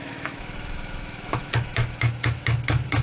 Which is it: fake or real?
fake